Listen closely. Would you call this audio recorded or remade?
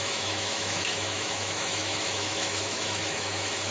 remade